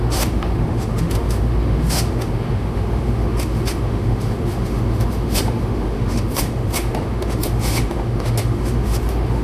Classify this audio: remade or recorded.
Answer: remade